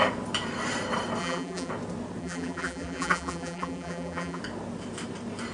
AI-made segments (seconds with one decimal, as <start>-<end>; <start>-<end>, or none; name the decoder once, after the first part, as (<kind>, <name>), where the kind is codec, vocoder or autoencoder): 1.2-1.7 (vocoder, BigVGAN v2); 2.2-4.4